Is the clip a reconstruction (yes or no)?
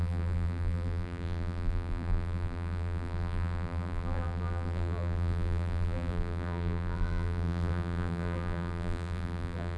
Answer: yes